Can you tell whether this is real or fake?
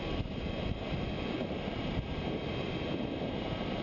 fake